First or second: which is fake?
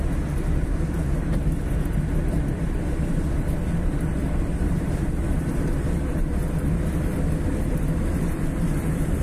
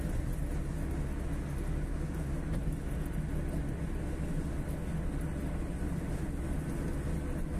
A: first